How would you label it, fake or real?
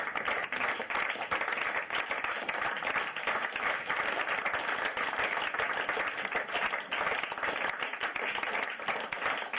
real